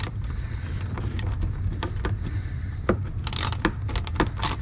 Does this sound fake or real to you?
real